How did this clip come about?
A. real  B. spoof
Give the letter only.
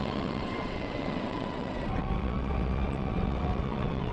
B